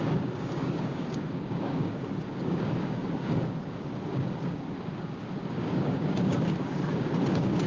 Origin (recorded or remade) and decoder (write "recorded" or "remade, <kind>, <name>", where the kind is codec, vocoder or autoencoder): remade, codec, DAC